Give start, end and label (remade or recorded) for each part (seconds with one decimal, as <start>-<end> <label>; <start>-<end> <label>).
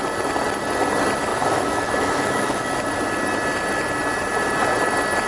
0.0-1.3 recorded; 1.3-2.7 remade; 2.7-5.3 recorded